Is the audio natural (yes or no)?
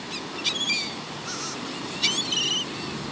yes